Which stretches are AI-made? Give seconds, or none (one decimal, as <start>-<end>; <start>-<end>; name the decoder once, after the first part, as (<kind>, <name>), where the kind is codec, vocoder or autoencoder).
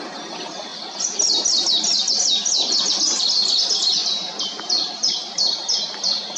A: 4.0-5.6 (vocoder, BigVGAN v2)